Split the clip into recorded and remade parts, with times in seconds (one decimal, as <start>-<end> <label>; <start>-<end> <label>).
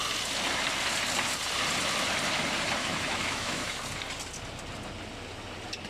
0.0-2.8 recorded; 2.8-3.8 remade; 3.8-5.9 recorded